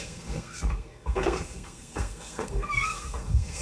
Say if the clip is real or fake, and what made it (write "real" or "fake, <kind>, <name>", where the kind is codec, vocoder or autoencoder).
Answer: fake, codec, SNAC